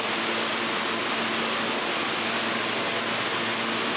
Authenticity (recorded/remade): recorded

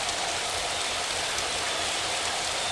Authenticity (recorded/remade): remade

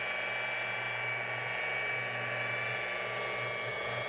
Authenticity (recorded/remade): recorded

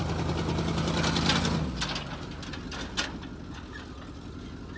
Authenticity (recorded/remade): recorded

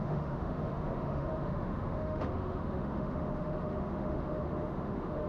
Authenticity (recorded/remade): remade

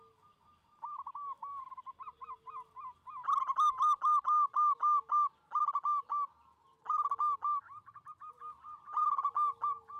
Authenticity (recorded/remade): recorded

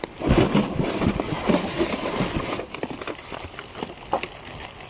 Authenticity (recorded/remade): recorded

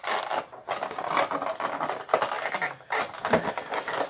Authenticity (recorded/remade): recorded